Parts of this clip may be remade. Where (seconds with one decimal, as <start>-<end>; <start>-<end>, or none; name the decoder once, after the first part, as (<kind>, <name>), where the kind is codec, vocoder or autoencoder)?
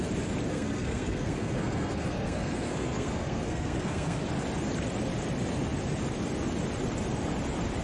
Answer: 0.5-4.3 (codec, SNAC)